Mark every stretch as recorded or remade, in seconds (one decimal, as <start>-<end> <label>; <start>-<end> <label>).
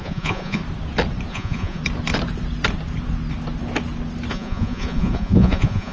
0.0-0.6 remade; 0.6-1.3 recorded; 1.3-1.8 remade; 1.8-4.3 recorded; 4.3-5.9 remade